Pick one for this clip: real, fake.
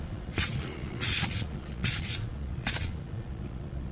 fake